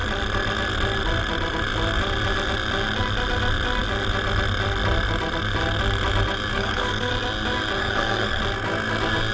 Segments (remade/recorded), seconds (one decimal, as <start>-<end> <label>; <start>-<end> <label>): 0.0-6.5 recorded; 6.5-7.1 remade; 7.1-7.8 recorded; 7.8-8.4 remade; 8.4-9.3 recorded